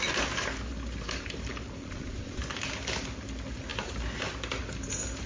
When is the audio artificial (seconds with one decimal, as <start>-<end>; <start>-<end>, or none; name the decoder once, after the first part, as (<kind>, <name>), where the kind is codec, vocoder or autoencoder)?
1.8-2.4 (vocoder, Vocos)